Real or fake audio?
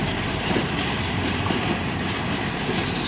real